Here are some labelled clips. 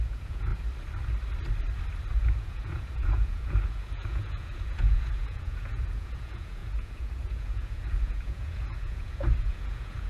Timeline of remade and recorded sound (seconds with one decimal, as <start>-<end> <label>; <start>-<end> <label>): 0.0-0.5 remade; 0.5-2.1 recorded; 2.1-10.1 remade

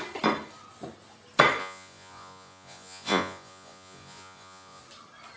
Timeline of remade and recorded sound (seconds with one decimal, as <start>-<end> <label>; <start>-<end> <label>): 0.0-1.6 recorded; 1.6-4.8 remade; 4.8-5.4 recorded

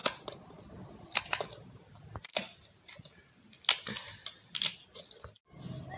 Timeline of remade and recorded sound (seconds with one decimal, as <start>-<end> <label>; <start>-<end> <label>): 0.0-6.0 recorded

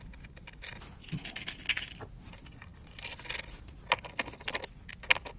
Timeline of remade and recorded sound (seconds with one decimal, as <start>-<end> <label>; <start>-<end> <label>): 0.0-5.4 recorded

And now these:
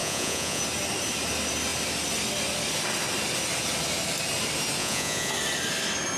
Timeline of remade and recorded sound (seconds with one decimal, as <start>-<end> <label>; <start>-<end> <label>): 0.0-0.6 remade; 0.6-4.8 recorded; 4.8-5.3 remade; 5.3-6.2 recorded

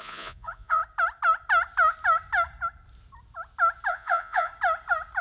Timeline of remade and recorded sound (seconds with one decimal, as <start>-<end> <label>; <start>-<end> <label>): 0.0-0.8 remade; 0.8-3.9 recorded; 3.9-4.5 remade; 4.5-5.2 recorded

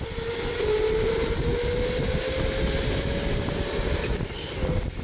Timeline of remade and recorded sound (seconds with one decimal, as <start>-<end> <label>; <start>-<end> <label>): 0.0-5.0 recorded